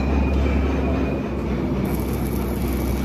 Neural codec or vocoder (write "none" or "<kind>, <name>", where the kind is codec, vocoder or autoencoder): none